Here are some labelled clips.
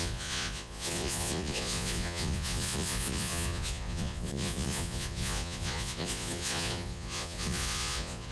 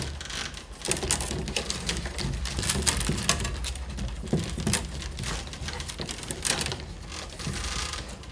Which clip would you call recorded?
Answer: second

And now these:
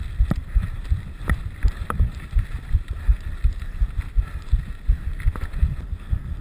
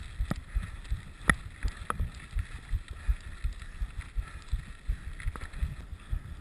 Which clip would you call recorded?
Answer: second